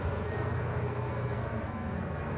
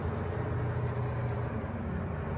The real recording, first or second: second